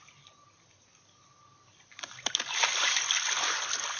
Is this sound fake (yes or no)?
no